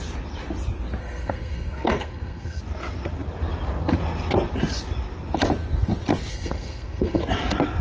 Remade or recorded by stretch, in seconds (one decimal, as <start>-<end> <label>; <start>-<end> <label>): 0.0-1.0 recorded; 1.0-2.6 remade; 2.6-6.3 recorded; 6.3-7.2 remade; 7.2-7.8 recorded